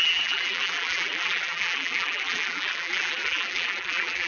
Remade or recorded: remade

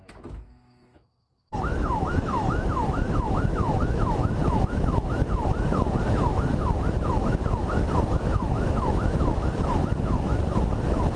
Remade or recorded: remade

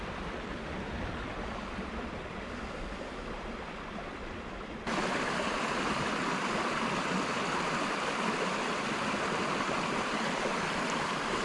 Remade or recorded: remade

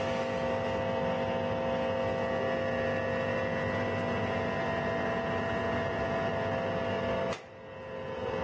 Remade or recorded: recorded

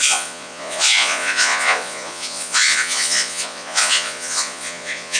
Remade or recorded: remade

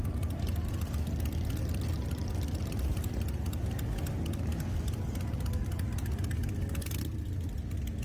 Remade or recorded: recorded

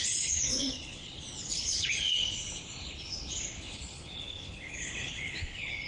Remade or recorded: remade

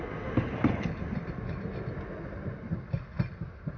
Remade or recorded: recorded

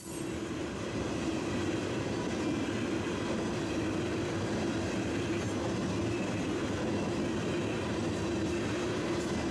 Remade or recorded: recorded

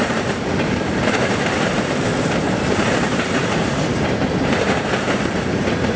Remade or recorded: remade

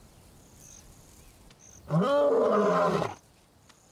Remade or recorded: recorded